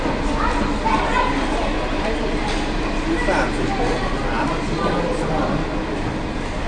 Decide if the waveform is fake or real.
real